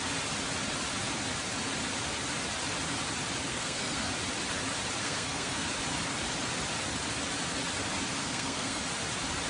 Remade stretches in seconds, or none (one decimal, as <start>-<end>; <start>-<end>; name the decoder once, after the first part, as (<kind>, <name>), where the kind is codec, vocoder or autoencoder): 3.5-4.1 (codec, SNAC); 5.0-5.7; 8.2-8.8